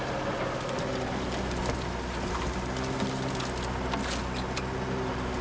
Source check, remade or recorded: recorded